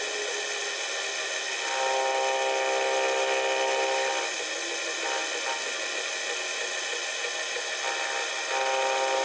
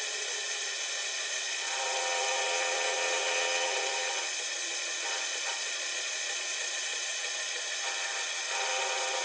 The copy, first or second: second